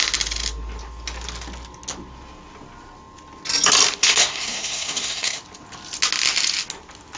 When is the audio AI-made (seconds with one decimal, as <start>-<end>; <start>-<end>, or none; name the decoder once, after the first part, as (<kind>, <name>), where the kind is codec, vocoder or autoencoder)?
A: 4.0-5.4 (codec, SNAC)

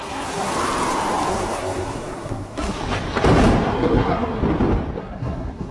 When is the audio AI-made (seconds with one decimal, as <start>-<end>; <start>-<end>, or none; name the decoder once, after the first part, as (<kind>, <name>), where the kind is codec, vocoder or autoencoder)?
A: 0.0-0.5 (codec, SNAC); 1.3-2.8; 3.7-4.4; 5.0-5.7

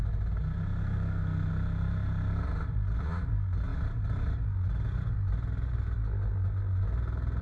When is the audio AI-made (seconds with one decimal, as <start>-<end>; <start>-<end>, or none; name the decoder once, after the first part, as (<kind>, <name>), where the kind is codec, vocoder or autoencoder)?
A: 0.8-1.5 (codec, SNAC)

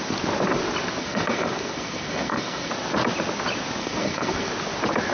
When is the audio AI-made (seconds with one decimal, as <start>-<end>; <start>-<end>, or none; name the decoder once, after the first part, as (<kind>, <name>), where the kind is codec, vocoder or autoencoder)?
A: 1.0-2.7 (codec, SNAC); 3.8-4.5

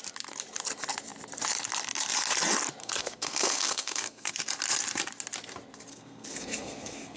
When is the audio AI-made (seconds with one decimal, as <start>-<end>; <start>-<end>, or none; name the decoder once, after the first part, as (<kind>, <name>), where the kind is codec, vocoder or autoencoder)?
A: 2.8-4.3 (codec, SNAC); 5.9-7.2